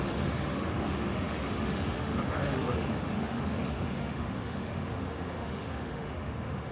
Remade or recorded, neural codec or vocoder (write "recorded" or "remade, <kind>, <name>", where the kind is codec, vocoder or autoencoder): remade, autoencoder, DAC-VAE